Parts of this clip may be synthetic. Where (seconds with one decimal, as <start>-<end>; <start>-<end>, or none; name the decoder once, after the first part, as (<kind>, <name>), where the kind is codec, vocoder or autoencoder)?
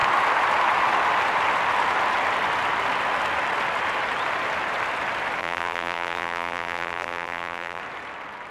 5.4-7.8 (vocoder, BigVGAN v2)